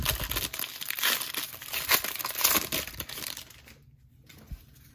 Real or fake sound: real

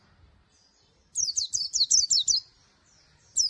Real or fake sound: real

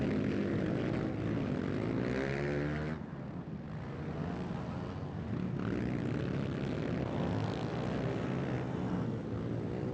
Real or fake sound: real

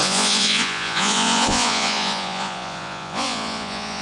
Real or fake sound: fake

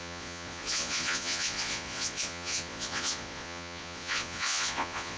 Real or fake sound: fake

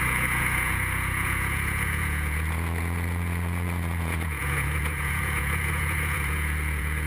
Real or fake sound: fake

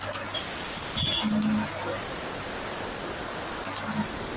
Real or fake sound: real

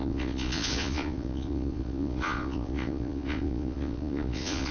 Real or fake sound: fake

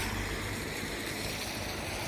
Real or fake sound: real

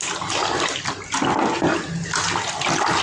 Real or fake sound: real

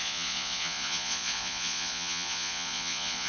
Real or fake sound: fake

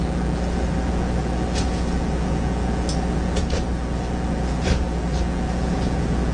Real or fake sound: real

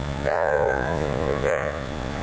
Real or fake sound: fake